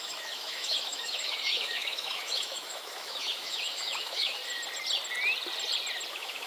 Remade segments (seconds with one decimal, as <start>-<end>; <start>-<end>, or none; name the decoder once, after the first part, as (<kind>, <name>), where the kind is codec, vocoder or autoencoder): 0.0-4.4 (autoencoder, DAC-VAE); 6.1-6.5